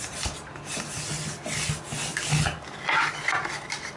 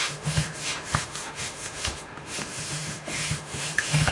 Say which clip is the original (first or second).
first